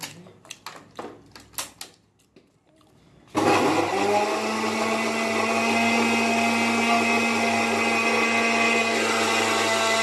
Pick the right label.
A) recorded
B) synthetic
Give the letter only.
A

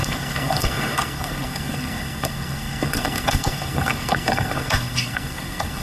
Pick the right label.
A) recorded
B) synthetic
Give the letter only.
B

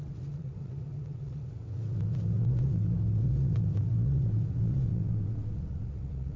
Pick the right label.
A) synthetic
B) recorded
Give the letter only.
A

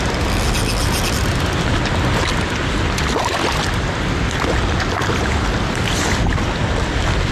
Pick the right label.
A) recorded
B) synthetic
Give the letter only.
A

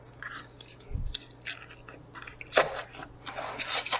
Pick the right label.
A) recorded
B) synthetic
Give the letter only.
A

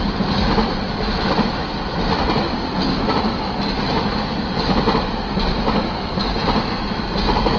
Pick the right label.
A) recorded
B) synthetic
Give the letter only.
A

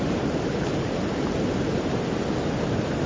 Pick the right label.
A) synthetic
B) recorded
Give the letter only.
B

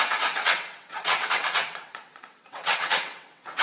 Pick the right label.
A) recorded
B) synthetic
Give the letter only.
B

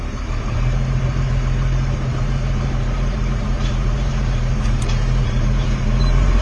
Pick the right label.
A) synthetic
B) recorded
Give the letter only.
A